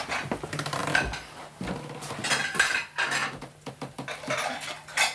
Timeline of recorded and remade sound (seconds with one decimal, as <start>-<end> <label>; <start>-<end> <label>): 0.0-5.1 recorded